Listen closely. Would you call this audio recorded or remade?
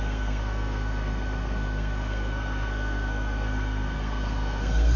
remade